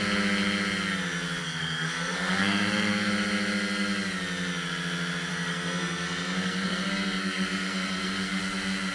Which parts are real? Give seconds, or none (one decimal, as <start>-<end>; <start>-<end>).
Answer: 0.0-1.4; 3.1-5.3; 8.4-8.9